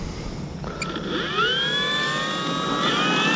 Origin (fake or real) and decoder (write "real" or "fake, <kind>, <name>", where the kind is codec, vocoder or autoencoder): real